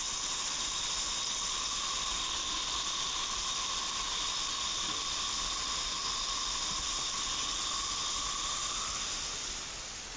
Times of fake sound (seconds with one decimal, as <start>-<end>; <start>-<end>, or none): none